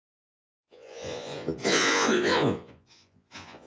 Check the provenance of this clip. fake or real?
fake